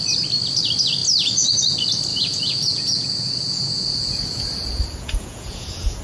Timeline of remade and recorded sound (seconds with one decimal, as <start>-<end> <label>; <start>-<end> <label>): 0.0-2.1 recorded; 2.1-6.0 remade